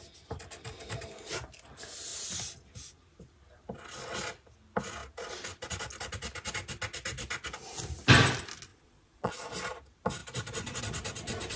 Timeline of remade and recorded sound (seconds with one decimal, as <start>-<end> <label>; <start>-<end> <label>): 0.0-8.7 recorded; 8.7-9.3 remade; 9.3-11.6 recorded

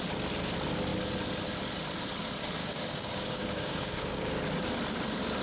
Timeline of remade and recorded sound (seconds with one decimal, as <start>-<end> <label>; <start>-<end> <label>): 0.0-2.6 recorded; 2.6-4.3 remade; 4.3-5.4 recorded

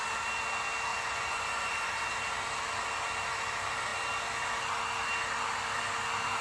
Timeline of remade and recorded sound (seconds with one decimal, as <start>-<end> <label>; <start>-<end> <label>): 0.0-0.9 recorded; 0.9-1.9 remade; 1.9-6.4 recorded

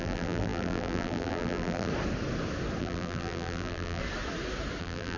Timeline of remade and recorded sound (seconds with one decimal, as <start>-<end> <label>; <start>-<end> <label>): 0.0-1.9 remade; 1.9-2.8 recorded; 2.8-4.0 remade; 4.0-4.8 recorded; 4.8-5.2 remade

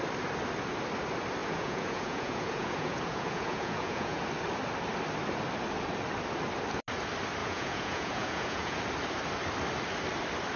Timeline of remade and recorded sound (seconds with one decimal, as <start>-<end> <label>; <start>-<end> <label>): 0.0-1.4 recorded; 1.4-4.2 remade; 4.2-7.4 recorded; 7.4-8.8 remade; 8.8-10.6 recorded

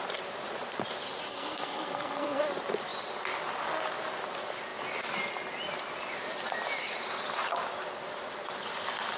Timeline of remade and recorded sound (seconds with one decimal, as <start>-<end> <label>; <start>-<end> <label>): 0.0-1.3 recorded; 1.3-2.4 remade; 2.4-9.2 recorded